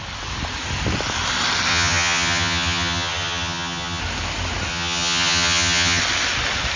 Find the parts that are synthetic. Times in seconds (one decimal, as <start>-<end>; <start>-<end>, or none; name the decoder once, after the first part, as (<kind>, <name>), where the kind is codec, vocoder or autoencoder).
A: 1.7-4.0 (vocoder, HiFi-GAN); 4.7-6.0